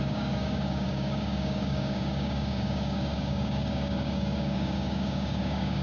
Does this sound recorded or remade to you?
remade